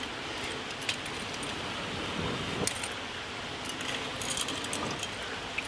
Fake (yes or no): no